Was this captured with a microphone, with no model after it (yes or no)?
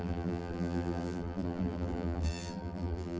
no